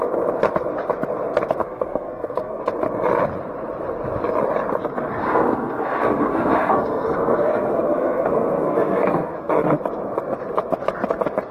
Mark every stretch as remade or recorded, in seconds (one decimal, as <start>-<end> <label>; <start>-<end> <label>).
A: 0.0-1.6 recorded; 1.6-2.6 remade; 2.6-5.2 recorded; 5.2-9.5 remade; 9.5-11.5 recorded

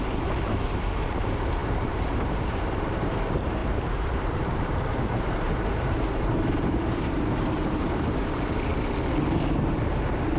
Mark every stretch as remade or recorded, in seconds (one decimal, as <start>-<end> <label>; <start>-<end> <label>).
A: 0.0-8.7 remade; 8.7-9.6 recorded; 9.6-10.4 remade

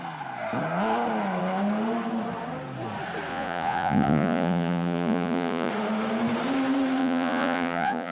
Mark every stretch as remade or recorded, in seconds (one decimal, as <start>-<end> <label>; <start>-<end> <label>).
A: 0.0-3.3 recorded; 3.3-5.7 remade; 5.7-7.0 recorded; 7.0-8.1 remade

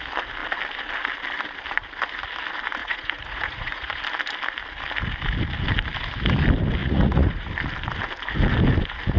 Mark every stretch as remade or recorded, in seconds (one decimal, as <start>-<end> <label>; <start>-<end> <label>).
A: 0.0-2.8 recorded; 2.8-4.0 remade; 4.0-6.8 recorded; 6.8-7.5 remade; 7.5-9.2 recorded